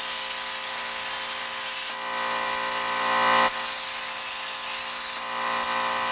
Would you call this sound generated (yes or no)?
no